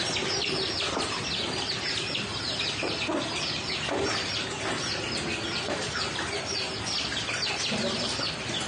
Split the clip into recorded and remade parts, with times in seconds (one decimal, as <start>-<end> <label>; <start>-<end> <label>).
0.0-8.7 recorded